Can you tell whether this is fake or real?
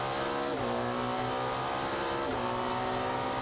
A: real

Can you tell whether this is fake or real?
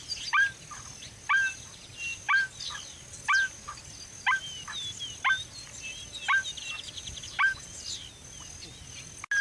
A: real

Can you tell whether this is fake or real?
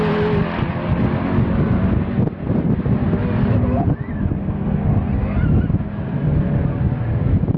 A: real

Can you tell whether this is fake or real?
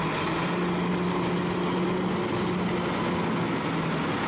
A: real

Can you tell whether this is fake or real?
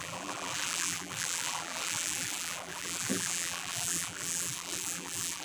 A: fake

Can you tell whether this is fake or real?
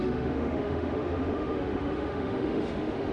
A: fake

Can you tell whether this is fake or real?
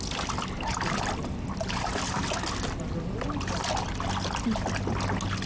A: real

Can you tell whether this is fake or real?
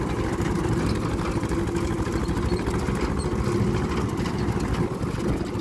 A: real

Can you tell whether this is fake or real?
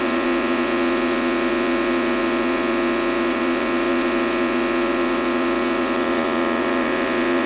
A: fake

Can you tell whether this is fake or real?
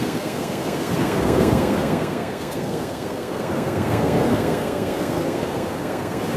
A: fake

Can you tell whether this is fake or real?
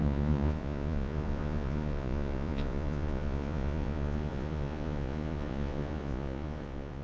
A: fake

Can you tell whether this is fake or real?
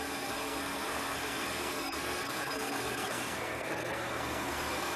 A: fake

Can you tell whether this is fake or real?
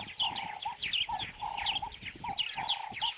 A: real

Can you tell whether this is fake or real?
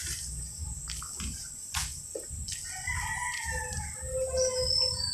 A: real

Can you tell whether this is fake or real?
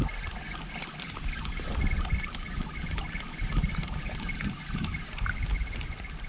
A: real